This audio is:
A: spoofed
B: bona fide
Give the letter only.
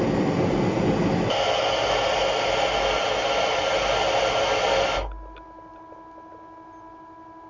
B